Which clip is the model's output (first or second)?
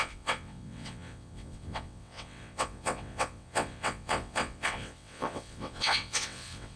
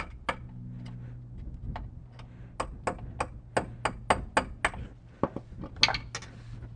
first